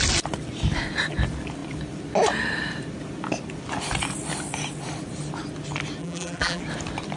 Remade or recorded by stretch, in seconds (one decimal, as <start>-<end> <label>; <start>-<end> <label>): 0.0-6.0 recorded; 6.0-6.6 remade; 6.6-7.2 recorded